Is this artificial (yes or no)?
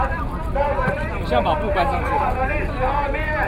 no